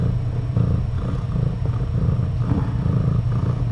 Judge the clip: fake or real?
real